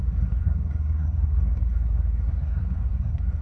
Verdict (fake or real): fake